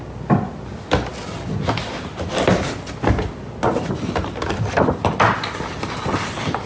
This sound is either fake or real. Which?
real